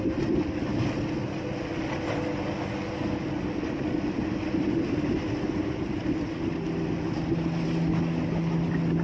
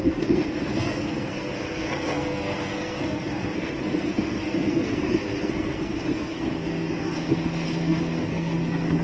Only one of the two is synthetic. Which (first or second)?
second